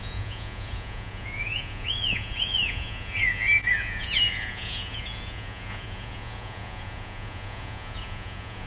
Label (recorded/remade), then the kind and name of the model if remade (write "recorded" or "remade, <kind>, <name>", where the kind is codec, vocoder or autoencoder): remade, vocoder, Vocos